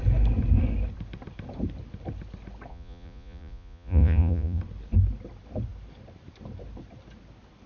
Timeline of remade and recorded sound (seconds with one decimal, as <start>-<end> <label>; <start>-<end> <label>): 0.0-2.7 recorded; 2.7-4.6 remade; 4.6-7.7 recorded

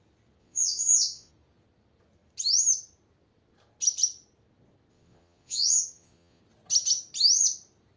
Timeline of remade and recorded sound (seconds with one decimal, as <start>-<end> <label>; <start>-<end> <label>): 0.0-0.4 recorded; 0.4-1.3 remade; 1.3-4.9 recorded; 4.9-6.4 remade; 6.4-8.0 recorded

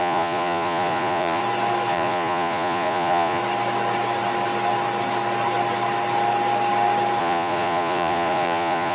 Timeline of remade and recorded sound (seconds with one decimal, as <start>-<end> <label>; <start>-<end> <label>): 0.0-1.4 remade; 1.4-1.9 recorded; 1.9-3.4 remade; 3.4-7.2 recorded; 7.2-8.9 remade

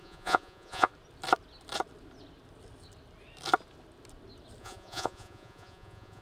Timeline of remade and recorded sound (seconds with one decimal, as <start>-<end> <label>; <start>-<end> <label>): 0.0-0.9 remade; 0.9-4.6 recorded; 4.6-6.2 remade

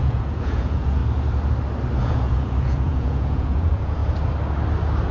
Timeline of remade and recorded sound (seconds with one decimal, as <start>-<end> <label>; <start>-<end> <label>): 0.0-1.0 remade; 1.0-2.0 recorded; 2.0-4.0 remade; 4.0-5.1 recorded

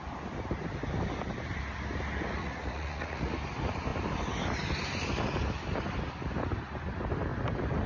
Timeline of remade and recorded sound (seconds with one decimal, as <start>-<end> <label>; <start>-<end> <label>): 0.0-2.4 recorded; 2.4-3.3 remade; 3.3-7.9 recorded